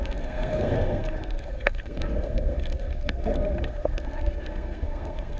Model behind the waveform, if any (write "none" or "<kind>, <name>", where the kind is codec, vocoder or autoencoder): codec, SNAC